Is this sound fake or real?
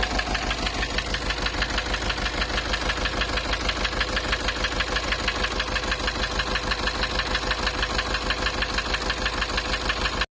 real